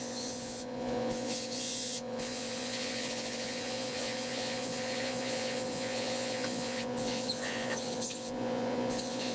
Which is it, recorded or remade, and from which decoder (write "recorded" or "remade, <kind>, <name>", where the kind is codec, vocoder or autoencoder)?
remade, vocoder, Vocos